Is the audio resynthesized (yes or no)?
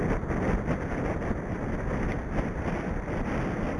no